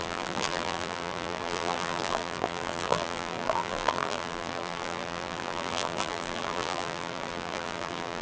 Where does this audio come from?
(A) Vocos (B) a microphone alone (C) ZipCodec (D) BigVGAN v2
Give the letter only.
D